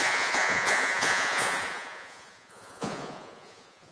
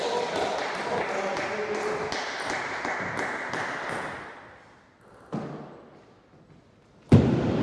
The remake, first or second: first